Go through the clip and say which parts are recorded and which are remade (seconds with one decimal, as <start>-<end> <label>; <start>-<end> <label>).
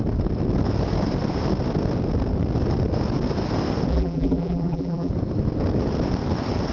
0.0-3.9 recorded; 3.9-5.1 remade; 5.1-6.7 recorded